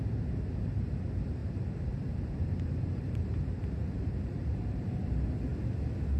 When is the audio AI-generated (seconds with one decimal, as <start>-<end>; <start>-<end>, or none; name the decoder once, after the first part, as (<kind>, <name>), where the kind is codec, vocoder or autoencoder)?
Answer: 1.4-5.1 (vocoder, BigVGAN v2)